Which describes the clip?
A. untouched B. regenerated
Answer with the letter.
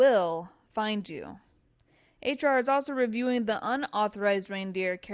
A